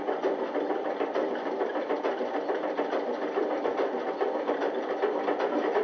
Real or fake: real